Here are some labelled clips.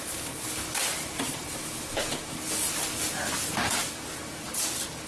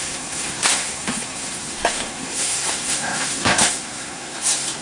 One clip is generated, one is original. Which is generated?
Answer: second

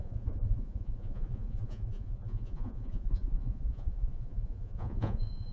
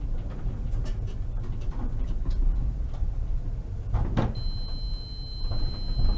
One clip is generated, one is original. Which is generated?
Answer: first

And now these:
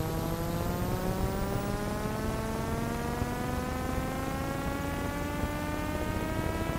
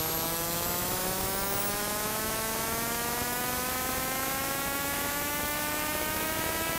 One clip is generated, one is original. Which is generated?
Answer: second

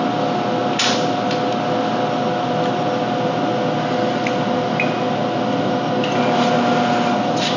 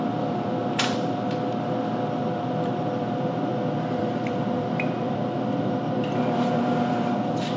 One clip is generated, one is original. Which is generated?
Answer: second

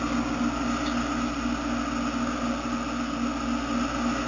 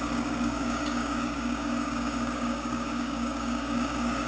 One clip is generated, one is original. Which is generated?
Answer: second